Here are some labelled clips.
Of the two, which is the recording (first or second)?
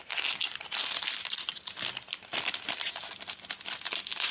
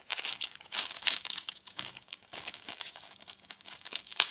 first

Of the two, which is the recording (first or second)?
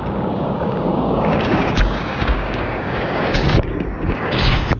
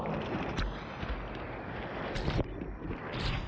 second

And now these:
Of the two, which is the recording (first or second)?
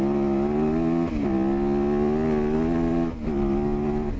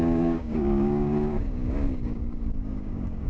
first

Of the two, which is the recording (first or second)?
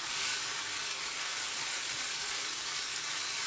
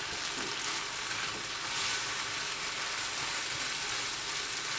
second